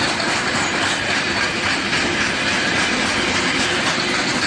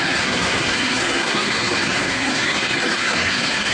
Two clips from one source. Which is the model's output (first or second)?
second